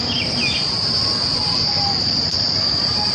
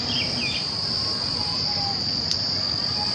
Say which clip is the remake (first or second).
first